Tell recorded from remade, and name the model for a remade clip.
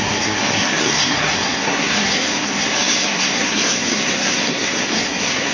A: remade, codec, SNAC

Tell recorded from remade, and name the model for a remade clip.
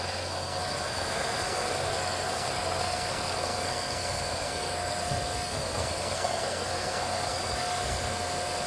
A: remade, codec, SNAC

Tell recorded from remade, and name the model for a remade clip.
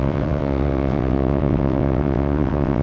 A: remade, vocoder, WaveNeXt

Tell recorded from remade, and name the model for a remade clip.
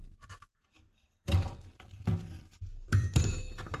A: remade, vocoder, BigVGAN v2